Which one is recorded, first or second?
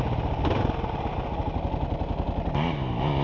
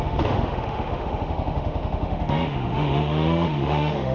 first